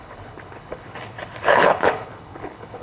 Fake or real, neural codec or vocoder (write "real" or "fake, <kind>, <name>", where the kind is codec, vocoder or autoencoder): fake, codec, HILCodec